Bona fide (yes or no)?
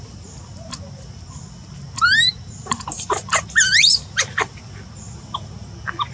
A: yes